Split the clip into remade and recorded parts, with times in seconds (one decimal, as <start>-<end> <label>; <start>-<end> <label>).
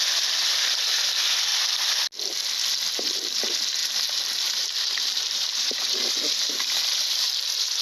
0.0-1.5 remade; 1.5-2.9 recorded; 2.9-7.8 remade